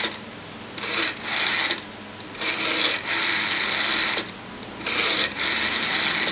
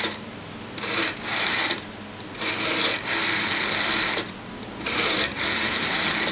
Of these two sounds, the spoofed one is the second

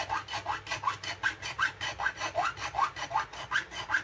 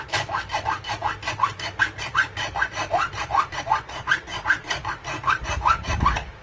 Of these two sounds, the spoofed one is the second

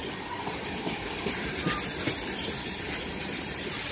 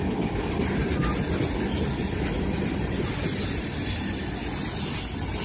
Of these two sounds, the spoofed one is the first